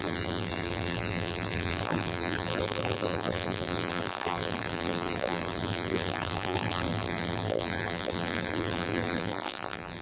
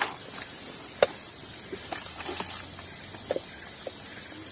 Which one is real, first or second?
second